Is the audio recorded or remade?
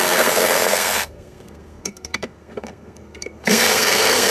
remade